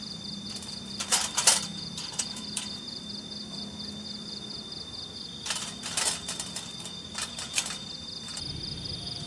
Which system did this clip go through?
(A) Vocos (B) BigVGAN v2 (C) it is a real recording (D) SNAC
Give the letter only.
B